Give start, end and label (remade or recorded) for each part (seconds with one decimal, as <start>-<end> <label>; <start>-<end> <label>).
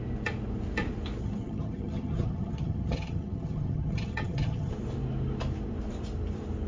0.0-1.2 recorded; 1.2-4.7 remade; 4.7-6.7 recorded